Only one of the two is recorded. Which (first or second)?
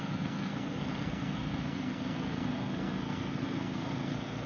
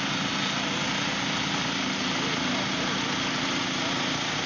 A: second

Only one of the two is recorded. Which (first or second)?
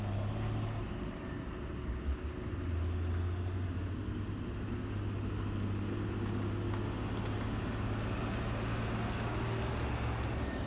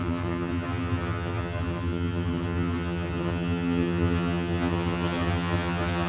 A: first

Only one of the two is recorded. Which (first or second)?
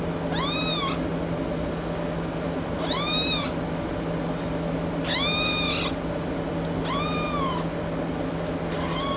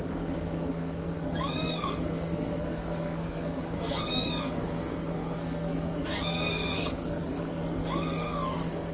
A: first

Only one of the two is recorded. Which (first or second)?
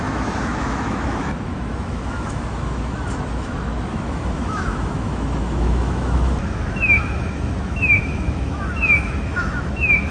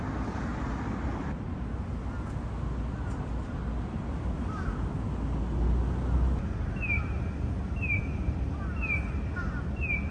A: second